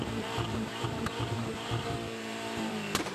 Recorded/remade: remade